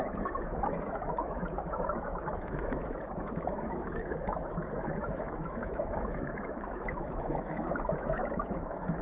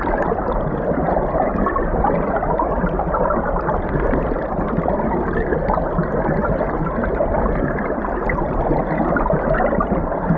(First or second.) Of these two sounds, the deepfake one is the first